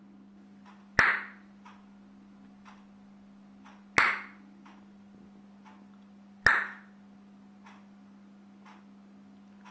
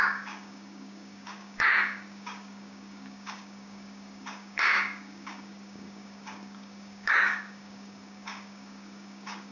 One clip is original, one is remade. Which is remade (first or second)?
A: second